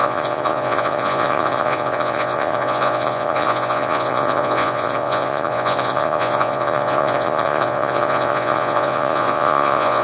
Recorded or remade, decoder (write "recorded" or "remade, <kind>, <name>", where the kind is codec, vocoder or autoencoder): remade, vocoder, Vocos